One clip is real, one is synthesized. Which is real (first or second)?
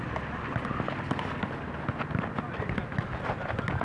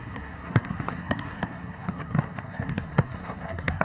first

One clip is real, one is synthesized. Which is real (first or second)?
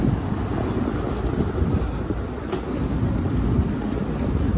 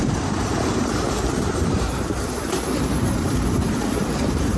first